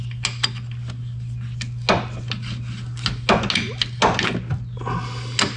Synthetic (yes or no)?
no